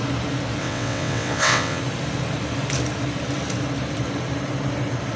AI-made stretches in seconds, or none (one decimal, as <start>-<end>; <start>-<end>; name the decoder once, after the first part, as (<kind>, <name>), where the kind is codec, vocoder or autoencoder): 0.6-1.8 (vocoder, WaveNeXt)